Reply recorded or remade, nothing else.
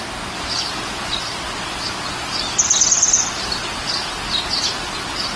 recorded